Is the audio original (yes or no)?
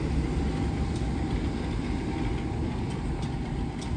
yes